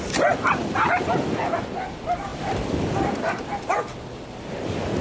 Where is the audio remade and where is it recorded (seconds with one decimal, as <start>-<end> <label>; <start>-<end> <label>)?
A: 0.0-5.0 recorded